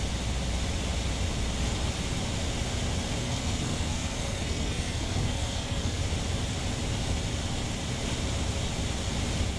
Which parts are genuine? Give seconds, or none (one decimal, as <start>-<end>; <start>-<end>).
0.0-3.2; 6.0-9.6